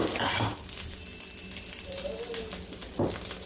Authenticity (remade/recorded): recorded